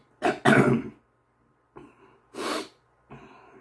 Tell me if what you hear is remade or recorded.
recorded